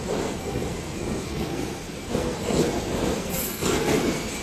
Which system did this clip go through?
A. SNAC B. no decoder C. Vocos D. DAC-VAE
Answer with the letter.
A